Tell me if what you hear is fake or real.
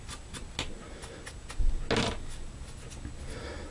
real